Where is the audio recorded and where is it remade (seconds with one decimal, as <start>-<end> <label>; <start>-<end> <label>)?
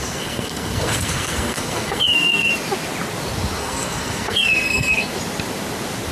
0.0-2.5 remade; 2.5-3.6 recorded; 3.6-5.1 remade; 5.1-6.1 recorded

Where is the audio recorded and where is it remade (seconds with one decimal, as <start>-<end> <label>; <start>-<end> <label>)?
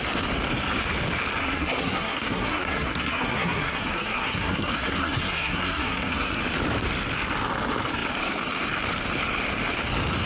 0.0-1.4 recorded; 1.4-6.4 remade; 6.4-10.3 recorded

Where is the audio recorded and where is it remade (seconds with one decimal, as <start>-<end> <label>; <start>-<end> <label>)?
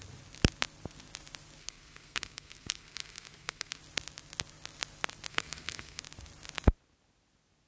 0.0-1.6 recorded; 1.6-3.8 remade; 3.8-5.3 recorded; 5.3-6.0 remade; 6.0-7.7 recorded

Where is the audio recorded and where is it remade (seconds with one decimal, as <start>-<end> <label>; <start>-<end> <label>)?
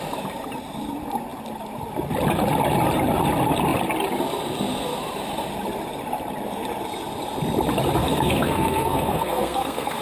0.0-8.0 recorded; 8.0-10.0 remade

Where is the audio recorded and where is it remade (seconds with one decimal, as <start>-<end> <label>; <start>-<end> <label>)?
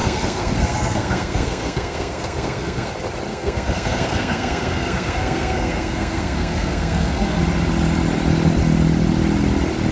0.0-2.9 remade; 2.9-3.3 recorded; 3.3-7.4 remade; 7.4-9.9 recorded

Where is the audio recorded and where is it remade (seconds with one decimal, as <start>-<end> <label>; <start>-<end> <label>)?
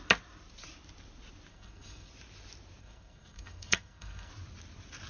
0.0-1.5 recorded; 1.5-2.1 remade; 2.1-2.8 recorded; 2.8-4.3 remade; 4.3-5.1 recorded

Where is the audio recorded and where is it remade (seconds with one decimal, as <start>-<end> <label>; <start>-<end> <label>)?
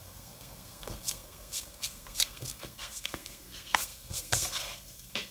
0.0-5.3 remade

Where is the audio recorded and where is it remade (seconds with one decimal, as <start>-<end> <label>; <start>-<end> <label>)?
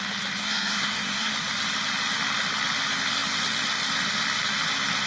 0.0-0.4 recorded; 0.4-1.3 remade; 1.3-5.1 recorded